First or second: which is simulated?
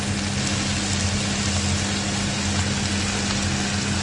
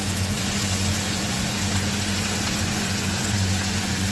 second